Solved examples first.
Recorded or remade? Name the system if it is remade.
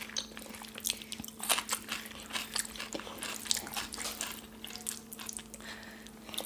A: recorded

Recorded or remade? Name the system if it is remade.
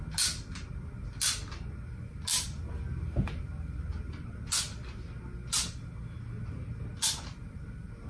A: recorded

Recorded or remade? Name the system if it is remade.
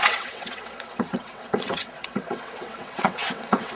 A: remade, vocoder, WaveNeXt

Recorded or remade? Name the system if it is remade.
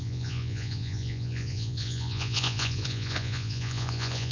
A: remade, vocoder, Vocos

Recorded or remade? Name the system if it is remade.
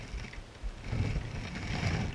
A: recorded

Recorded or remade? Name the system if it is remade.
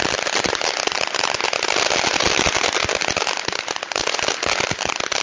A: recorded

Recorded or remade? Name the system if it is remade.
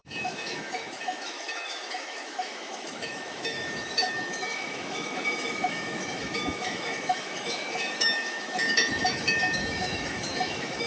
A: remade, autoencoder, DAC-VAE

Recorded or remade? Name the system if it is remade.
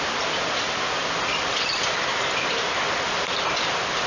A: recorded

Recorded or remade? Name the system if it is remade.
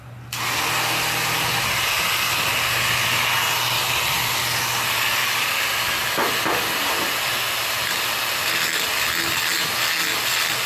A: recorded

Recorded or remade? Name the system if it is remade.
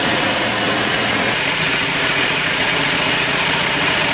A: remade, vocoder, Vocos